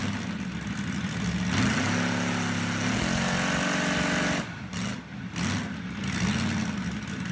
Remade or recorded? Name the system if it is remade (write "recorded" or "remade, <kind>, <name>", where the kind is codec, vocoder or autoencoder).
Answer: recorded